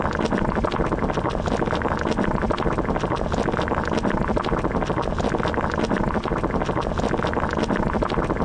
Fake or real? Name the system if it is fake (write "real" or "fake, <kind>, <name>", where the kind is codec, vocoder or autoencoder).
real